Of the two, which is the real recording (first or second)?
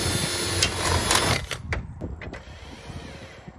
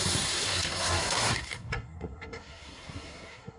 first